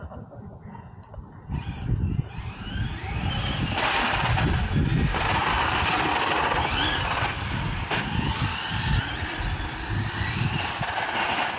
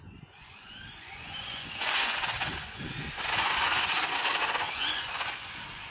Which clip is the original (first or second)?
first